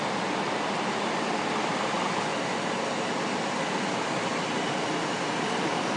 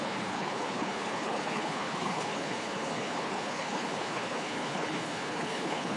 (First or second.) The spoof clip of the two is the second